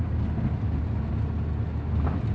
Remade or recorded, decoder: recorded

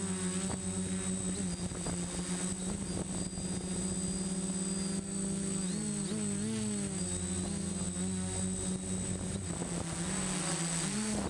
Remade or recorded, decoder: recorded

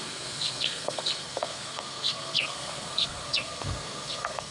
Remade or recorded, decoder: remade, codec, SNAC